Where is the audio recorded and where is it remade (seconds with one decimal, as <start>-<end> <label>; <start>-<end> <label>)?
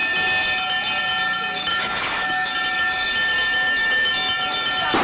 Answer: 0.0-1.7 recorded; 1.7-2.5 remade; 2.5-5.0 recorded